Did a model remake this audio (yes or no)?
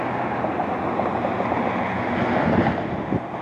no